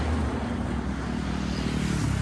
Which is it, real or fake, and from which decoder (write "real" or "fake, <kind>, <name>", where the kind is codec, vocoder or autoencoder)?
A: real